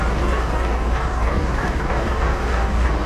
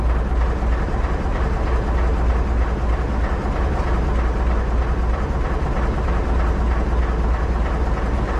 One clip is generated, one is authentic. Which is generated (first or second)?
first